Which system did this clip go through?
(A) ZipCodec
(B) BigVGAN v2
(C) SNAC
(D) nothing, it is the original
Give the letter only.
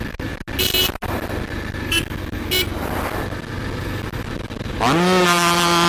D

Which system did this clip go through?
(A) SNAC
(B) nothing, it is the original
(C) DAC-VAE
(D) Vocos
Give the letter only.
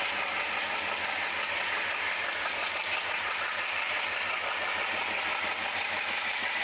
B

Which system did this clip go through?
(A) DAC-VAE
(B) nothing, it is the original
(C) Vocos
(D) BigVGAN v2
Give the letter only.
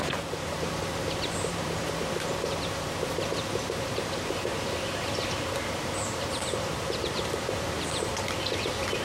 D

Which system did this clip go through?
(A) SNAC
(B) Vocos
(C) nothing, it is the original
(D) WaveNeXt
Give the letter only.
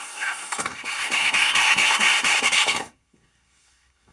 A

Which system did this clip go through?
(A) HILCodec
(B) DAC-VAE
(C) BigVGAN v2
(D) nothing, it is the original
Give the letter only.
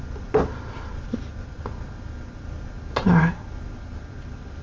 D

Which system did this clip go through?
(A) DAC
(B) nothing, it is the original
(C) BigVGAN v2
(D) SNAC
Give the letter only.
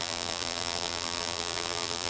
C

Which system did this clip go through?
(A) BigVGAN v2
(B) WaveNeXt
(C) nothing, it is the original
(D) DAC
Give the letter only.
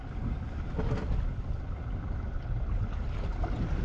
C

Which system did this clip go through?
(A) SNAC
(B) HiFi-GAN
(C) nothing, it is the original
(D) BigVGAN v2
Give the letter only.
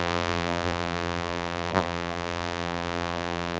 D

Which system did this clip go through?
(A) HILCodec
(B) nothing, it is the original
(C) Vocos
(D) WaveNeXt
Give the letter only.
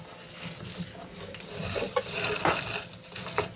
B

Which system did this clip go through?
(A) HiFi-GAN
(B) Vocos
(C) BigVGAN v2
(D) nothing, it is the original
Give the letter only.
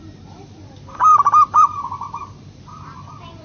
C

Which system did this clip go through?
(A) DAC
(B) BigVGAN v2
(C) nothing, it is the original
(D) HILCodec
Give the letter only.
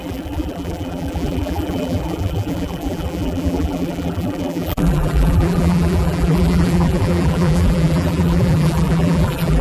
B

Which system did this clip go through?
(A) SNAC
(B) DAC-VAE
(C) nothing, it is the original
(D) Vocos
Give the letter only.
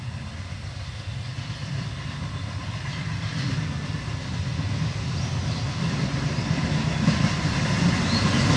C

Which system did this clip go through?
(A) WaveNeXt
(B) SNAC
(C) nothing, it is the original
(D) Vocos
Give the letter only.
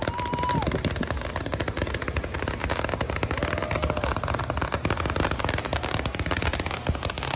C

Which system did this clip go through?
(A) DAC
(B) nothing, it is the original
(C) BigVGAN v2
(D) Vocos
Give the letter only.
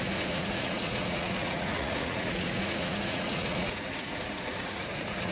D